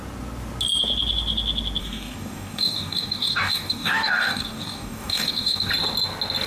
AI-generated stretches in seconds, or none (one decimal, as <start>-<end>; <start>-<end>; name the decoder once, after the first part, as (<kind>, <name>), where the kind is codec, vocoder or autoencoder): 1.8-5.7 (codec, DAC)